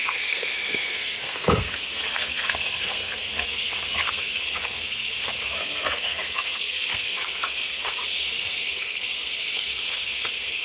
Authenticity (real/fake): fake